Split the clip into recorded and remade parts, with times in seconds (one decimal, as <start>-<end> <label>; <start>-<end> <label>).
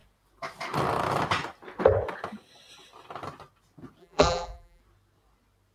0.0-4.0 recorded; 4.0-4.8 remade; 4.8-5.7 recorded